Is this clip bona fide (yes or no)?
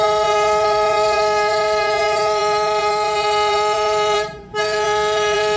no